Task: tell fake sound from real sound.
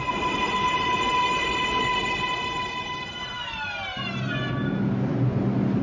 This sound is real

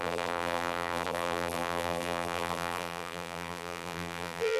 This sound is fake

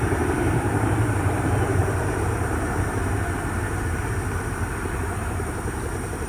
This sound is fake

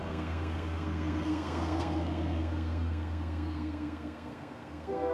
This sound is fake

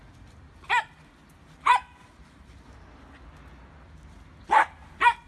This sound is real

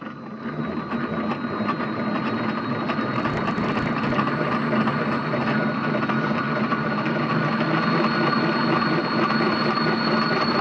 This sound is real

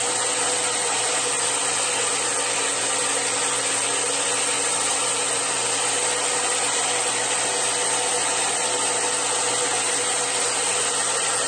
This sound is real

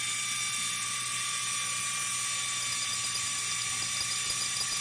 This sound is real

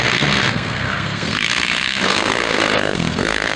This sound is fake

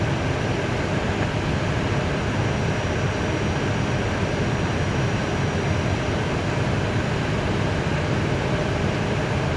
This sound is real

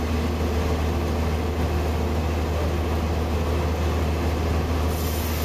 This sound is real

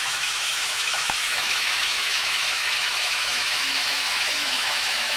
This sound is fake